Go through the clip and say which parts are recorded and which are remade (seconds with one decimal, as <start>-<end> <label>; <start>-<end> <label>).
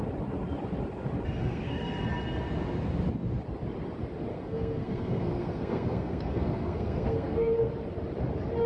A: 0.0-1.4 recorded; 1.4-2.0 remade; 2.0-4.3 recorded; 4.3-7.7 remade; 7.7-8.7 recorded